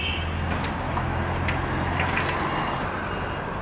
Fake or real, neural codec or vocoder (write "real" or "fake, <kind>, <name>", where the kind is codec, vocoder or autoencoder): real